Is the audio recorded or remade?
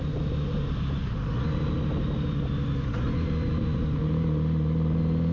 recorded